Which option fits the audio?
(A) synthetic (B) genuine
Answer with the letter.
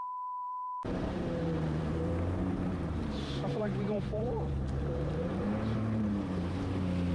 A